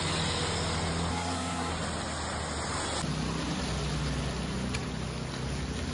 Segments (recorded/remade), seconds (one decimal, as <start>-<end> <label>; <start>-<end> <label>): 0.0-1.1 recorded; 1.1-1.7 remade; 1.7-5.9 recorded